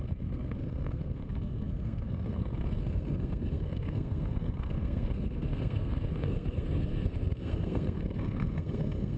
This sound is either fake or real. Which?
fake